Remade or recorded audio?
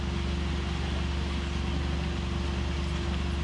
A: recorded